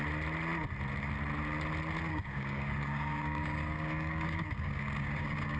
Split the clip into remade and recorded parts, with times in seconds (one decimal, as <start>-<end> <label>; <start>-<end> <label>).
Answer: 0.0-2.1 recorded; 2.1-5.6 remade